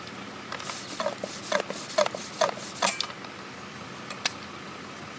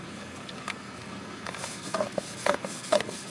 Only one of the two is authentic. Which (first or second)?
first